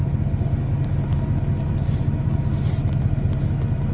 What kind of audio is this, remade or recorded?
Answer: recorded